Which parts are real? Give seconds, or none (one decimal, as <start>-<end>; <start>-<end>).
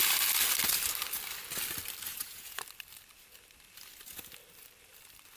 0.0-2.1; 2.6-5.4